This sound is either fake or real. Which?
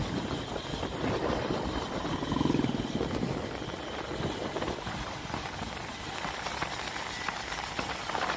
real